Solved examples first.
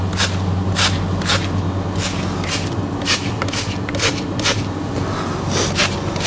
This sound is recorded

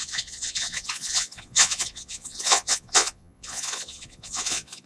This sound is remade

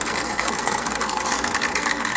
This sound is remade